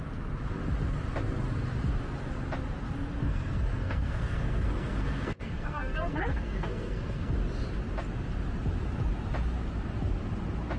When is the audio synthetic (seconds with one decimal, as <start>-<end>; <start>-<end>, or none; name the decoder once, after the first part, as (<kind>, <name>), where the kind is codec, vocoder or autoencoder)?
3.2-7.3 (codec, SNAC)